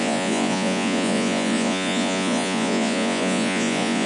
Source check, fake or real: fake